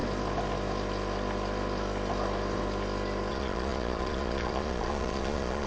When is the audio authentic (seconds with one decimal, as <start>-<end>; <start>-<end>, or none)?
0.0-3.3